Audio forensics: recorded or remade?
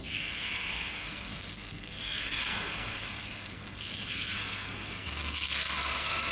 remade